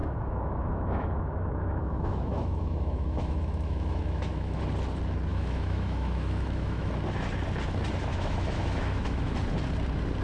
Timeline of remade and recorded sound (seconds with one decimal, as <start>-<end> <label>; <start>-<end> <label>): 0.0-4.6 remade; 4.6-5.3 recorded; 5.3-6.9 remade; 6.9-8.1 recorded; 8.1-9.3 remade; 9.3-10.2 recorded